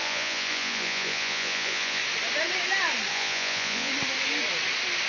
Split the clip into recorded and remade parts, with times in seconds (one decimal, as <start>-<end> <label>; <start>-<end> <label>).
0.0-2.0 remade; 2.0-3.1 recorded; 3.1-3.9 remade; 3.9-5.1 recorded